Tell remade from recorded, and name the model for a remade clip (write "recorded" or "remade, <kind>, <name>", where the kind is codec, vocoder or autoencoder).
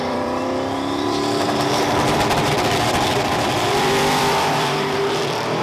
remade, vocoder, BigVGAN v2